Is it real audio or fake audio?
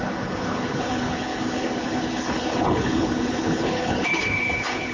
fake